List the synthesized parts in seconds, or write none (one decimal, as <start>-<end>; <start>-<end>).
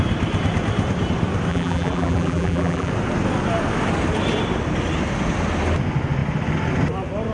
1.5-2.9